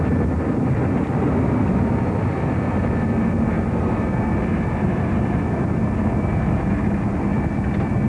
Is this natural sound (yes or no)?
yes